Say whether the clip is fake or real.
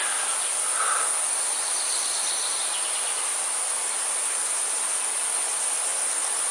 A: real